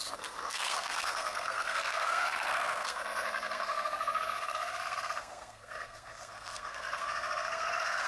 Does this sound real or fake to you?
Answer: fake